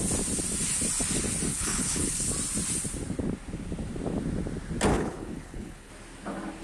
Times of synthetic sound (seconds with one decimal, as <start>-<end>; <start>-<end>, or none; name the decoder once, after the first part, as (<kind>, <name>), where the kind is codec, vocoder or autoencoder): 1.5-2.3 (codec, HILCodec); 4.9-5.9